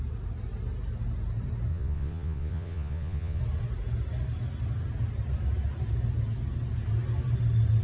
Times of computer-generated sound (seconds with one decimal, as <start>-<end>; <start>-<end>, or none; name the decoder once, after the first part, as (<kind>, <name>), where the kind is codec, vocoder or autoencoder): 1.7-3.4 (vocoder, Vocos)